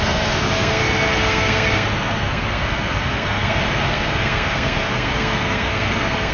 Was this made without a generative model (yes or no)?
no